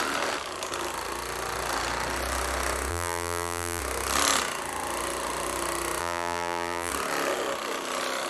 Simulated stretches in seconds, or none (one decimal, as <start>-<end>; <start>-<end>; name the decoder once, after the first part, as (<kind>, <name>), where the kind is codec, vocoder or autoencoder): 2.9-3.8 (vocoder, BigVGAN v2); 6.0-6.9